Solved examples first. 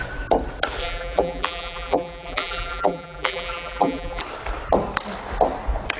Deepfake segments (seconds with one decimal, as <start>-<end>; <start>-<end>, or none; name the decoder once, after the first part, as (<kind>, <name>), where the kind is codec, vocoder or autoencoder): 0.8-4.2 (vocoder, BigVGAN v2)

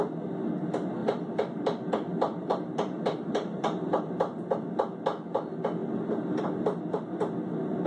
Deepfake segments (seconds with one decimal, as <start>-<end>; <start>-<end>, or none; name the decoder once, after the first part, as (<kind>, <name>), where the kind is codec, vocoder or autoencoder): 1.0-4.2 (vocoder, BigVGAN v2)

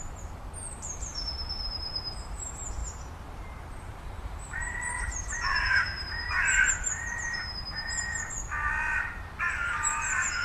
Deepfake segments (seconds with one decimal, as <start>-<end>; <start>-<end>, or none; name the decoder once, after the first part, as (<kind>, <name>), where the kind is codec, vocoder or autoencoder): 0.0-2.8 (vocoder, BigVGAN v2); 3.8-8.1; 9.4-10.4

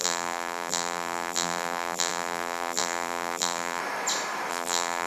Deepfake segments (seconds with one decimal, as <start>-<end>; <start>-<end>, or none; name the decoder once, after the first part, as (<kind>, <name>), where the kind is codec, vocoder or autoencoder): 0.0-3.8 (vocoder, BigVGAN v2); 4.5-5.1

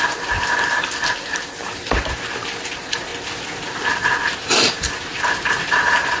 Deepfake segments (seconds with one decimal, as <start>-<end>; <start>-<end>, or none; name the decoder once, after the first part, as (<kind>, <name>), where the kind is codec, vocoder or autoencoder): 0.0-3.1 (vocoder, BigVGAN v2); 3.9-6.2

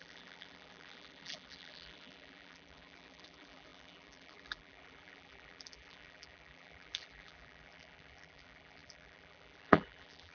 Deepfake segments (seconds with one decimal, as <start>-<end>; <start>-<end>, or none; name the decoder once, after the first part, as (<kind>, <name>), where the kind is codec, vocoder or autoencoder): 0.0-10.3 (vocoder, BigVGAN v2)